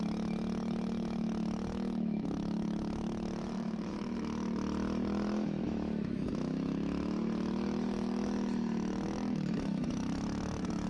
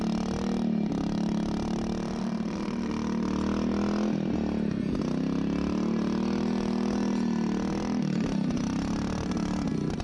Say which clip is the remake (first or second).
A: first